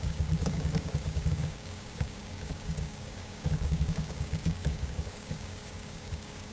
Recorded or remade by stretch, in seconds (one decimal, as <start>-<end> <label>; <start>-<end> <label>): 0.0-6.5 remade